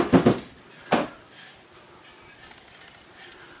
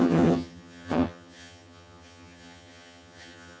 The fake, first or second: second